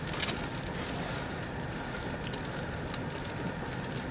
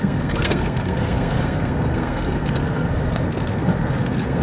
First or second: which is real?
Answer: first